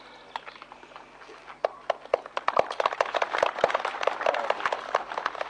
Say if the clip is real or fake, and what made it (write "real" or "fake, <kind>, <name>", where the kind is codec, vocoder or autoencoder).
real